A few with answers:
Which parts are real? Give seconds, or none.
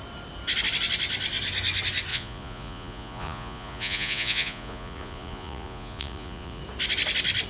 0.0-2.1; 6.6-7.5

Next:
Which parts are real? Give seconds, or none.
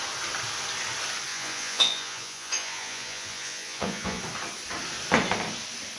0.0-1.3; 4.2-6.0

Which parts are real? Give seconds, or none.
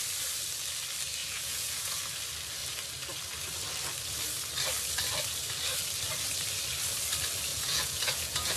0.0-1.2; 2.0-7.5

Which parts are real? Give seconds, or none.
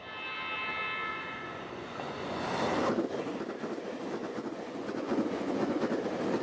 0.0-1.1; 2.4-4.2; 5.8-6.4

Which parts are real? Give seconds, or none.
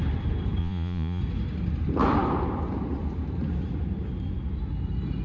0.0-0.6; 1.2-5.2